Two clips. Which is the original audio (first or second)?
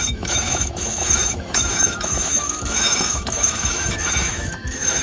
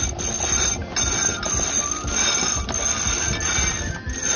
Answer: second